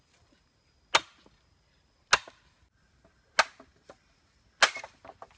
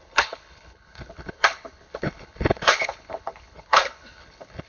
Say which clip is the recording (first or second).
first